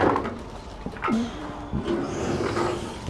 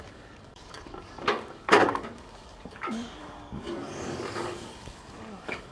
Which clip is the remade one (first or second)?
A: second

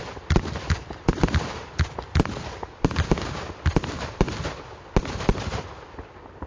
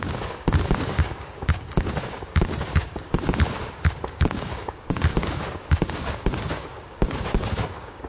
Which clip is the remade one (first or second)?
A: second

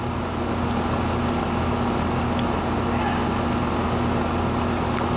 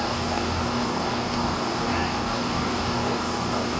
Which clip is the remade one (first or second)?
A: second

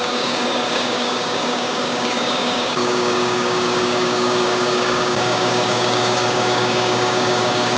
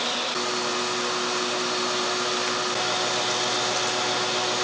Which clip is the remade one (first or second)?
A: first